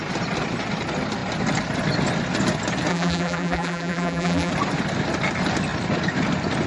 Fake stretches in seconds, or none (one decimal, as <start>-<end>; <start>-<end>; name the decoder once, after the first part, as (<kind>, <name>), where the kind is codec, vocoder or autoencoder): 2.9-4.5 (vocoder, BigVGAN v2)